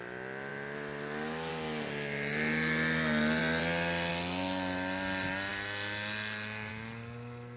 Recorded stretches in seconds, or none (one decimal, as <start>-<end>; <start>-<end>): 0.0-7.6